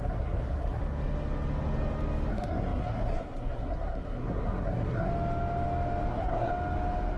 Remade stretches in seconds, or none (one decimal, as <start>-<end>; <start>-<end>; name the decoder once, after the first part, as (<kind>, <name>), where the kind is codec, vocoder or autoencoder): 0.0-0.8 (codec, SNAC); 2.3-5.1; 6.1-6.5